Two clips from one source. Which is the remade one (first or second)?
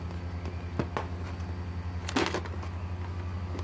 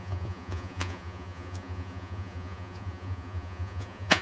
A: second